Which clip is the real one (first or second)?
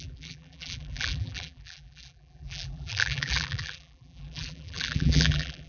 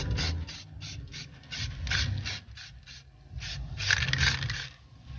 second